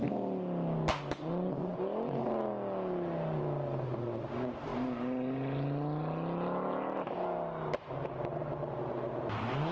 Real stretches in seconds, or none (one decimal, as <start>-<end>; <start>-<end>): 0.0-9.7